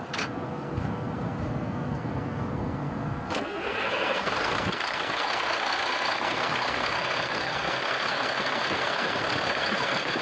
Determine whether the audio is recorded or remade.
remade